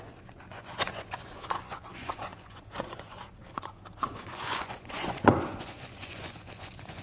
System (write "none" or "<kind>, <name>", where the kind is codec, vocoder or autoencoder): vocoder, Vocos